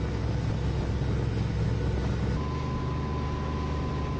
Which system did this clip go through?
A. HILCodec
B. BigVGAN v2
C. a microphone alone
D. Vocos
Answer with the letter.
C